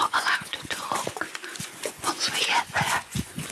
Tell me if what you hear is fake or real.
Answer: fake